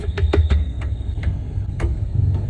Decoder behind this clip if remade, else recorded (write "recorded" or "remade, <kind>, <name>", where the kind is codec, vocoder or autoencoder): remade, codec, SNAC